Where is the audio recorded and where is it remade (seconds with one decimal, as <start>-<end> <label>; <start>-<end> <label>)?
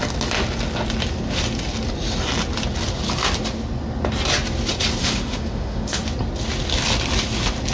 0.0-5.0 recorded; 5.0-6.0 remade; 6.0-7.7 recorded